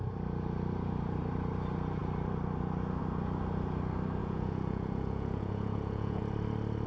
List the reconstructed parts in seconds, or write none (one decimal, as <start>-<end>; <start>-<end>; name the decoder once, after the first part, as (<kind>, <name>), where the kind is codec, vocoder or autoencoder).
4.2-6.2 (vocoder, Vocos)